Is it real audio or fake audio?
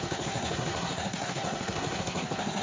fake